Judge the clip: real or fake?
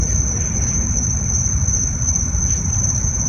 fake